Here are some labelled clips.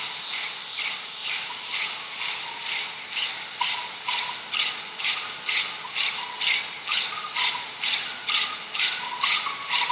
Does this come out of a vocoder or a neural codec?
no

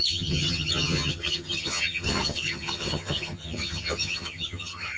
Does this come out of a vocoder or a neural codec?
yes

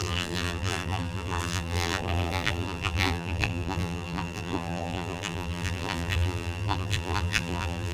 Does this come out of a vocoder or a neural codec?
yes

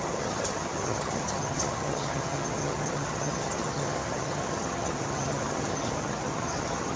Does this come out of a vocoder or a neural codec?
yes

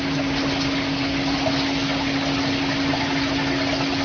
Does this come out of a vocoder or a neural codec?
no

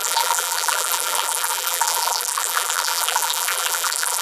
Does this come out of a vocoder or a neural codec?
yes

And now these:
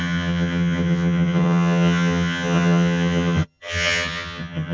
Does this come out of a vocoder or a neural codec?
yes